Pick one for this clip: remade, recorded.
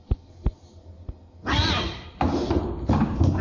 recorded